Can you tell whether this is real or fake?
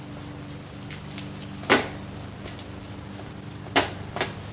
real